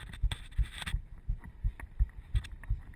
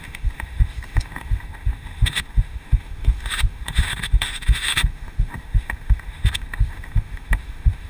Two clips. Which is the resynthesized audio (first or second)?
second